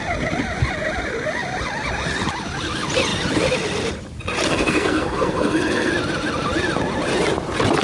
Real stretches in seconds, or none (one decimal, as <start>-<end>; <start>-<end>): 0.0-4.5; 5.9-7.8